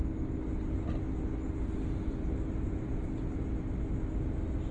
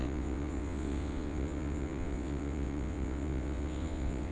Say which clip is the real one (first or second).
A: first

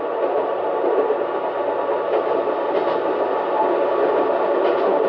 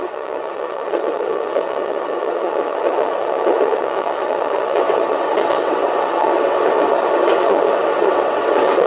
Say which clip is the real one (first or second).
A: first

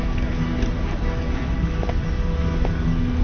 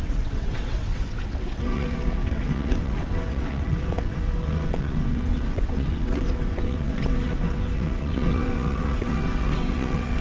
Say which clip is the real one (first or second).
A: first